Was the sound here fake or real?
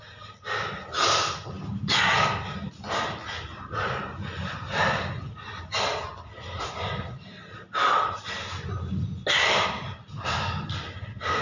real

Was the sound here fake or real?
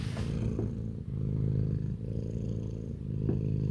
real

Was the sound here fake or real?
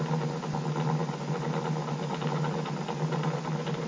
real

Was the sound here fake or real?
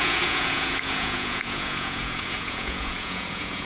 fake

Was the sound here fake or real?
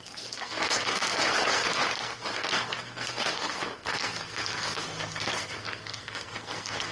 fake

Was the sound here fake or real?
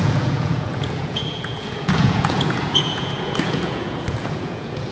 fake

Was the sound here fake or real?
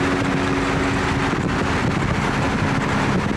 real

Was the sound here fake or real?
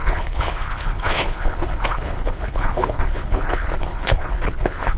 fake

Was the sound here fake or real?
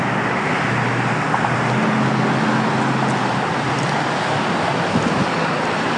real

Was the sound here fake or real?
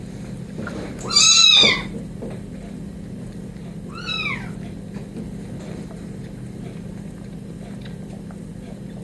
fake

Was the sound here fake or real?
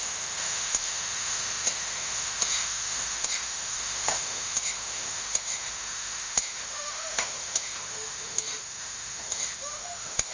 fake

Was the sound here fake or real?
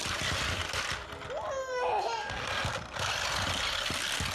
real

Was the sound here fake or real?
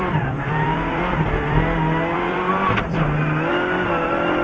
fake